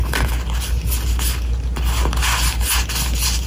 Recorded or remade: recorded